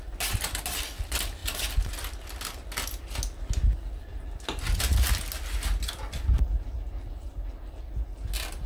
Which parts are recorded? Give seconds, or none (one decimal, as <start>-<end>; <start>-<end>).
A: 0.0-8.7